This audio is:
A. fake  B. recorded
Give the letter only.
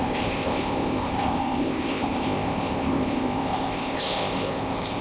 A